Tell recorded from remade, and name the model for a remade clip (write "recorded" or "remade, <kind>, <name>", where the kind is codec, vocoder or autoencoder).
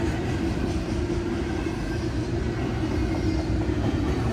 recorded